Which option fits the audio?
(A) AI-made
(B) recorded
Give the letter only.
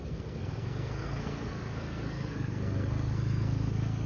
A